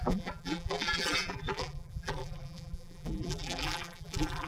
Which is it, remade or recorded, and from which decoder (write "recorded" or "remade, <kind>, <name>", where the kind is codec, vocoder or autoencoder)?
remade, vocoder, BigVGAN v2